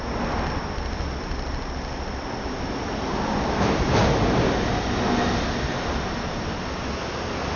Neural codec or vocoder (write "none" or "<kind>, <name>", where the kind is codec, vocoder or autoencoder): none